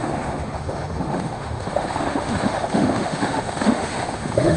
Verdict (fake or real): fake